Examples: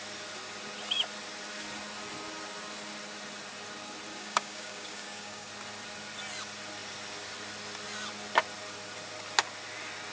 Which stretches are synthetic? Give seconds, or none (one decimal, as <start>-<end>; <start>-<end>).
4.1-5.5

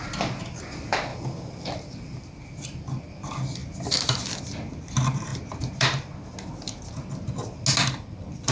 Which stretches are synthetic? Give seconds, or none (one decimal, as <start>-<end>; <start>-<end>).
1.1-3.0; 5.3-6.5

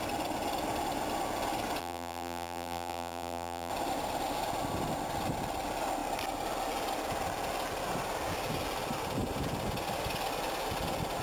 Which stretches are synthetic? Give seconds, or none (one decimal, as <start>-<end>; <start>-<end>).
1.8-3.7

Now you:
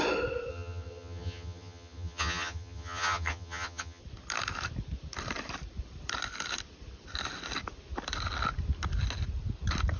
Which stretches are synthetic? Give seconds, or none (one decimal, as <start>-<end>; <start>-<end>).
0.5-4.0

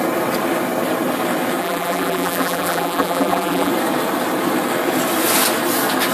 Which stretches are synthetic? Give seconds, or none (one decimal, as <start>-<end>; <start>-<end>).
1.6-3.7